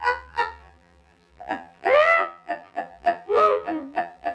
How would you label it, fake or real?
fake